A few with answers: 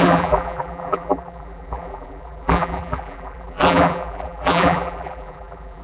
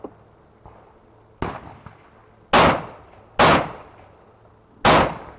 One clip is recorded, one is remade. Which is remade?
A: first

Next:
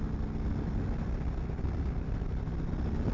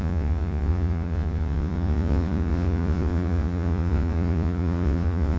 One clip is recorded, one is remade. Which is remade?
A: second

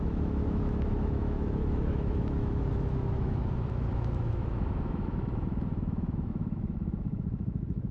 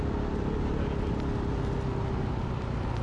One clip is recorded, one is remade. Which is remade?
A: first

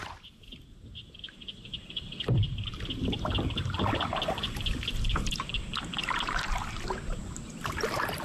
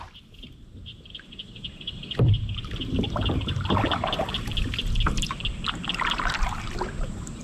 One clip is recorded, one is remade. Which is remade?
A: first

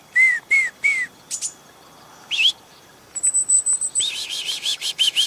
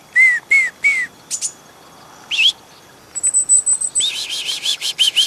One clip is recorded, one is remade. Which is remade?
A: first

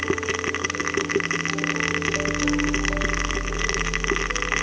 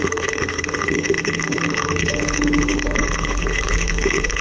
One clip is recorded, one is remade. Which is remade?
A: second